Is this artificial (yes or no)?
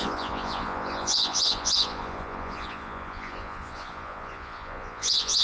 yes